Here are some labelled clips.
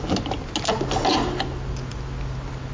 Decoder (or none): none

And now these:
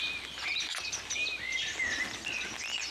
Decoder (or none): none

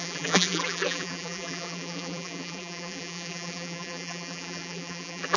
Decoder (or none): vocoder, BigVGAN v2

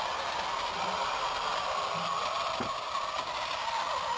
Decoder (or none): none